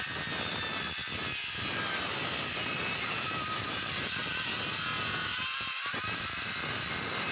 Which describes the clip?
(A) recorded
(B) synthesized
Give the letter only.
A